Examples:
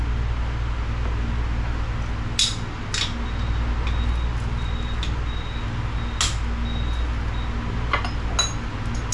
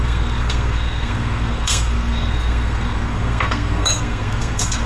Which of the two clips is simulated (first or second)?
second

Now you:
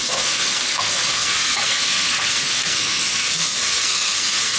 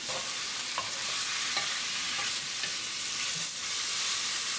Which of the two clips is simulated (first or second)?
first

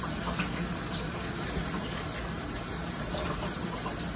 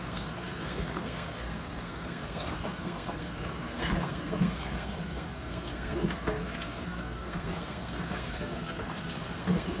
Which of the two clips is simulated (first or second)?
second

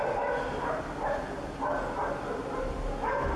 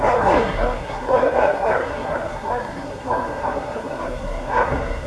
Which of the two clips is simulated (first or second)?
second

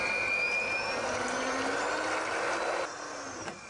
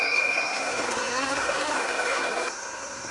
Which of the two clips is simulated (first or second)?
second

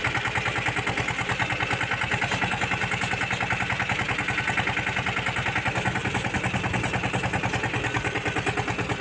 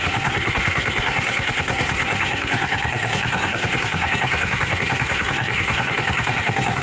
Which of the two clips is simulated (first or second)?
second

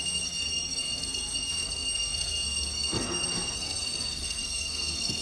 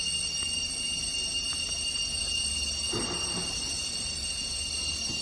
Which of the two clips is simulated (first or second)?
first